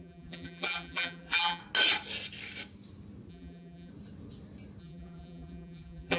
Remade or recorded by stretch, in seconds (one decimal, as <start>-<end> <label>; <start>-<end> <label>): 0.0-1.6 remade; 1.6-3.3 recorded; 3.3-3.9 remade; 3.9-4.8 recorded; 4.8-6.2 remade